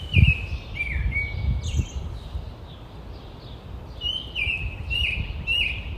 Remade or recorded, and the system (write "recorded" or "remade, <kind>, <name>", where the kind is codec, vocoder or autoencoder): recorded